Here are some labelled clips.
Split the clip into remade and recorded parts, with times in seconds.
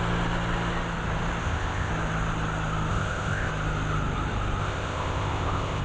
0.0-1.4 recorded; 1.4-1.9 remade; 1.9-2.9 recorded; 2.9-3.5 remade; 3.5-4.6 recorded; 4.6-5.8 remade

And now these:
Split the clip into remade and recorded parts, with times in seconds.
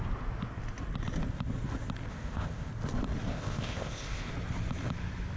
0.0-2.1 recorded; 2.1-2.7 remade; 2.7-3.3 recorded; 3.3-4.3 remade; 4.3-5.4 recorded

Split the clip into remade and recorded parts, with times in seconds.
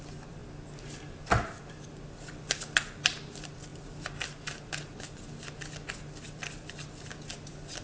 0.0-7.8 recorded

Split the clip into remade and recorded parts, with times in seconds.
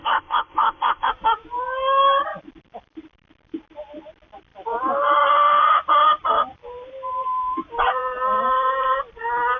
0.0-1.1 remade; 1.1-9.6 recorded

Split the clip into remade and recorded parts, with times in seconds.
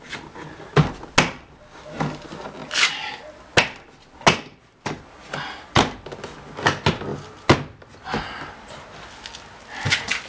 0.0-10.3 recorded